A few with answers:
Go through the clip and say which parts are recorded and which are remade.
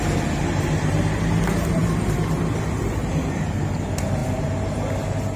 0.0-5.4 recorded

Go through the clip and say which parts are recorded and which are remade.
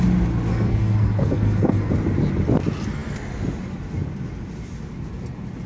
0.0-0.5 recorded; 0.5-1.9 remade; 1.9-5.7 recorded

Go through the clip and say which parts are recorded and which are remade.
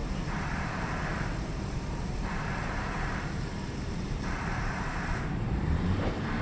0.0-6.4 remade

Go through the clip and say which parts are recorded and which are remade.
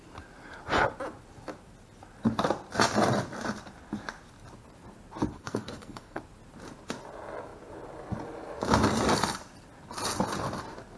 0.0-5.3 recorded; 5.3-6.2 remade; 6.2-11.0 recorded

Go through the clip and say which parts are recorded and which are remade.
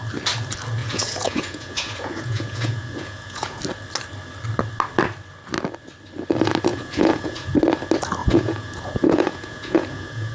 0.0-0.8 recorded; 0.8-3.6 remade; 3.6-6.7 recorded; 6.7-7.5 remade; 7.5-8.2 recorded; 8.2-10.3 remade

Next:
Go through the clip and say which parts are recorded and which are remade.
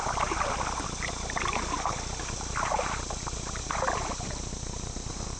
0.0-5.4 recorded